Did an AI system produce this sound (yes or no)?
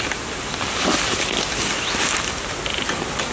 no